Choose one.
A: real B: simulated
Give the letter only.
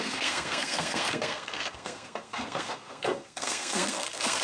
B